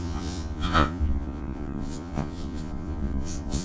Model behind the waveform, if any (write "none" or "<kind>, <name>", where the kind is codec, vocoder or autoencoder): vocoder, Vocos